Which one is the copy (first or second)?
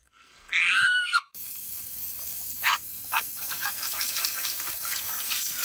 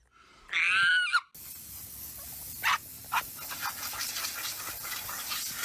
first